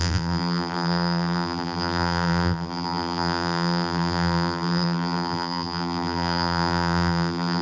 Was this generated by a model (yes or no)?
yes